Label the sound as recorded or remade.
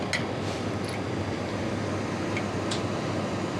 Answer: recorded